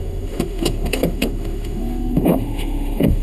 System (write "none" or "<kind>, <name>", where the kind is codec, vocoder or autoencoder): autoencoder, DAC-VAE